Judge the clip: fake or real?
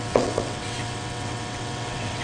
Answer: fake